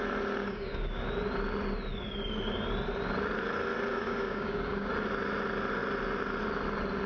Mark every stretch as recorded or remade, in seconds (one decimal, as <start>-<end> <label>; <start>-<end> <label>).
0.0-0.4 recorded; 0.4-1.0 remade; 1.0-3.9 recorded; 3.9-4.9 remade; 4.9-7.1 recorded